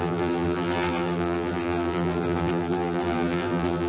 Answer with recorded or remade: remade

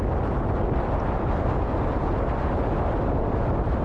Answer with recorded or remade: recorded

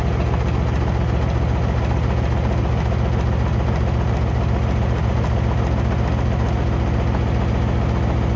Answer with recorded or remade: recorded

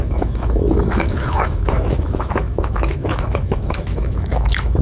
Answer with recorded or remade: remade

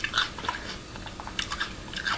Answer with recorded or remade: recorded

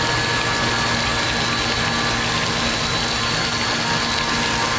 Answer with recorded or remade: recorded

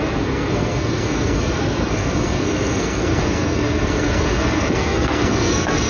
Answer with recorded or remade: remade